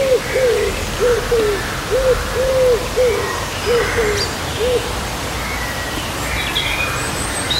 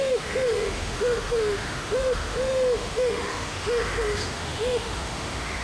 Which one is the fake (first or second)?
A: second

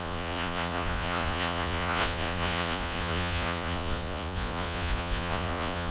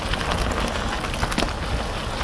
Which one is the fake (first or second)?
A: first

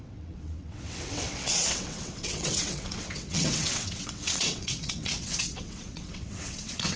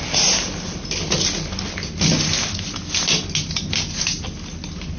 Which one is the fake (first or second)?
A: first